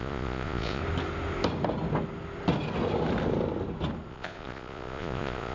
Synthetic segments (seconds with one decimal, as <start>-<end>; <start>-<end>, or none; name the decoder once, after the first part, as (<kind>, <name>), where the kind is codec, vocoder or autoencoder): 0.0-0.8 (vocoder, Vocos); 4.1-5.5